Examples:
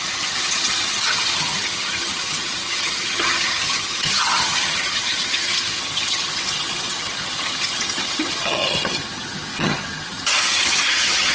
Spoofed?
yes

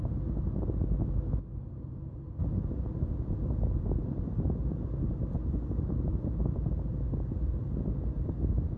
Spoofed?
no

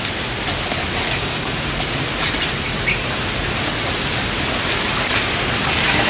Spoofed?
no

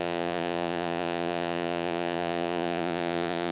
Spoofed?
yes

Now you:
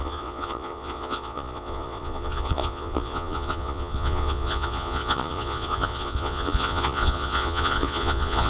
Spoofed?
yes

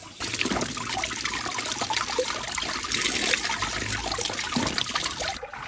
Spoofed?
no